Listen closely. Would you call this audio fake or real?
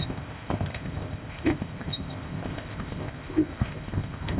fake